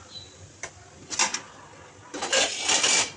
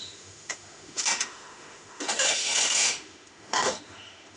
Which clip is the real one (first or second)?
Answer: first